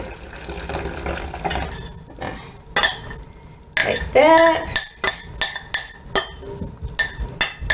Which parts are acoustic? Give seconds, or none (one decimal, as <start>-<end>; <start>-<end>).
0.0-7.7